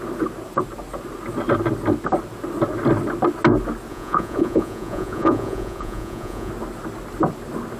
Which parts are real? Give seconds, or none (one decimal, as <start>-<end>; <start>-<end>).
0.0-3.9; 6.5-7.8